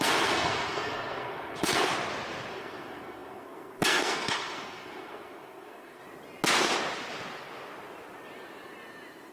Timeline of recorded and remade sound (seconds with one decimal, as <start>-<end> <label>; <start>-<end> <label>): 0.0-1.9 remade; 1.9-2.5 recorded; 2.5-6.0 remade; 6.0-9.3 recorded